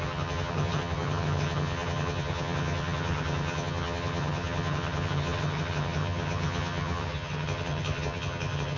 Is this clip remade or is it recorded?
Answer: remade